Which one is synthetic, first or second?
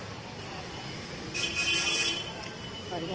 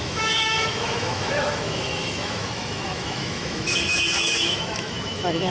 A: second